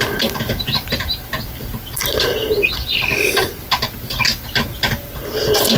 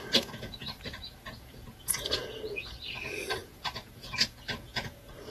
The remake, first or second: second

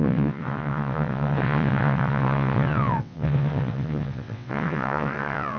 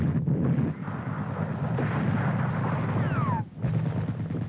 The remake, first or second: first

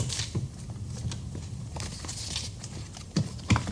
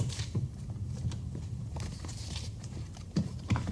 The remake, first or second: second